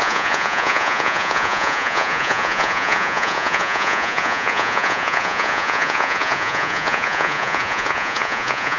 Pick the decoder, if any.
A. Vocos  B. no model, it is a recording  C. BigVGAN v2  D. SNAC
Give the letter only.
A